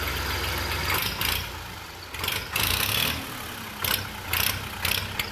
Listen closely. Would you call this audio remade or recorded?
recorded